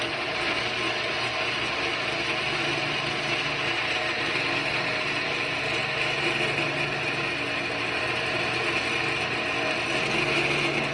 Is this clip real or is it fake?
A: real